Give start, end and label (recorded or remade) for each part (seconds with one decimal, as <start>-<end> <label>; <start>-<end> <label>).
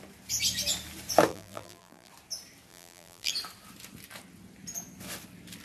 0.0-1.3 recorded; 1.3-2.1 remade; 2.1-2.7 recorded; 2.7-3.3 remade; 3.3-5.6 recorded